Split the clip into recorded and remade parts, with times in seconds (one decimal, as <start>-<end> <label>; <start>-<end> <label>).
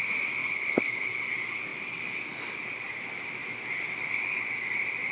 0.0-0.4 recorded; 0.4-1.2 remade; 1.2-5.1 recorded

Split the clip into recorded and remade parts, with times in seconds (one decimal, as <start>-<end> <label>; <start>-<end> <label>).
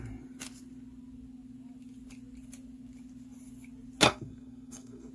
0.0-4.0 recorded; 4.0-5.1 remade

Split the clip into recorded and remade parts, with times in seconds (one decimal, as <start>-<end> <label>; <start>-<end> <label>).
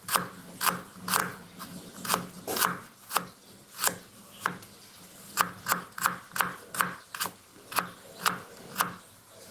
0.0-9.5 recorded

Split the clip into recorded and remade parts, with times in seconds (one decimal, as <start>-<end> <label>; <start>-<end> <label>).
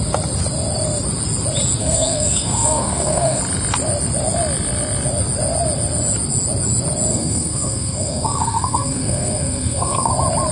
0.0-1.8 recorded; 1.8-3.4 remade; 3.4-7.1 recorded; 7.1-10.1 remade; 10.1-10.5 recorded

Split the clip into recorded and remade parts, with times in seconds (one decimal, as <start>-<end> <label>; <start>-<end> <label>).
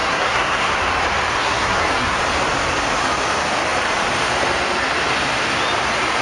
0.0-0.7 remade; 0.7-1.4 recorded; 1.4-2.2 remade; 2.2-6.2 recorded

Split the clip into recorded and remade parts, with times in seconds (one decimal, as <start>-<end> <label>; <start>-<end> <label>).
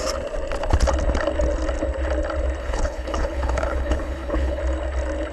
0.0-2.6 recorded; 2.6-4.6 remade; 4.6-5.3 recorded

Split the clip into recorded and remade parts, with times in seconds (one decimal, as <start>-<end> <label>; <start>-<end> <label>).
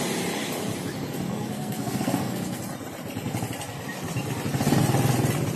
0.0-1.3 recorded; 1.3-2.6 remade; 2.6-5.6 recorded